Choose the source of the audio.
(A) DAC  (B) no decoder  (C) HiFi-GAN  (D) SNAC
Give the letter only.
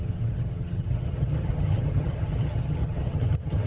C